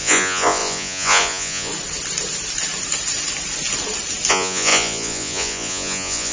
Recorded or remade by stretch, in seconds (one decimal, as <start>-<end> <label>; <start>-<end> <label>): 0.0-1.7 remade; 1.7-4.3 recorded; 4.3-6.3 remade